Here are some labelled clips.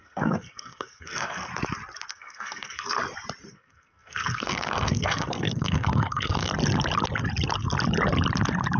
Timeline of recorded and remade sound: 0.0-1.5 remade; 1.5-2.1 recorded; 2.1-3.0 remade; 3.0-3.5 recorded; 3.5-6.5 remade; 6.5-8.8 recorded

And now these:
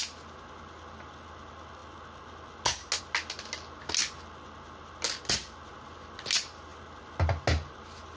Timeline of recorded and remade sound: 0.0-8.2 recorded

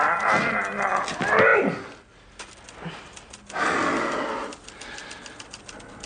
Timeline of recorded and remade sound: 0.0-6.1 recorded

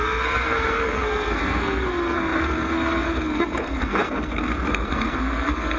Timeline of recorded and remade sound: 0.0-5.8 remade